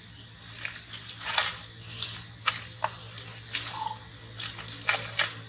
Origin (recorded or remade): recorded